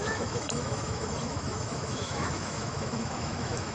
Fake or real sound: fake